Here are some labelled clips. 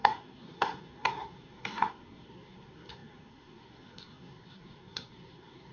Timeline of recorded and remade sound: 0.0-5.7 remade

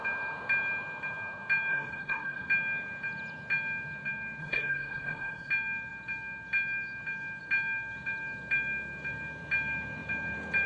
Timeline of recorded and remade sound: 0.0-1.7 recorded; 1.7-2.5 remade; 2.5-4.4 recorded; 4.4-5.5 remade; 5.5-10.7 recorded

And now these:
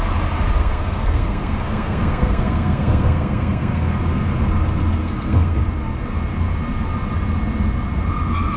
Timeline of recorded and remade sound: 0.0-0.6 recorded; 0.6-4.0 remade; 4.0-5.0 recorded; 5.0-5.6 remade; 5.6-8.6 recorded

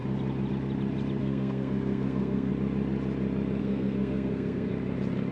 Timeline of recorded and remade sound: 0.0-1.2 recorded; 1.2-2.5 remade; 2.5-3.6 recorded; 3.6-4.7 remade; 4.7-5.3 recorded

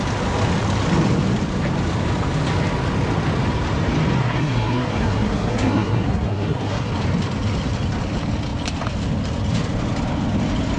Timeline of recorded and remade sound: 0.0-4.2 recorded; 4.2-6.9 remade; 6.9-10.8 recorded

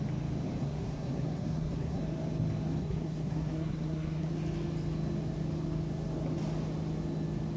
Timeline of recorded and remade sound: 0.0-0.6 recorded; 0.6-2.0 remade; 2.0-2.8 recorded; 2.8-4.3 remade; 4.3-7.6 recorded